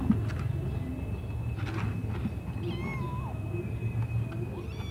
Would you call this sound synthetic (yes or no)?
no